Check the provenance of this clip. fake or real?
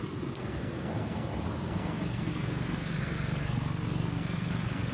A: fake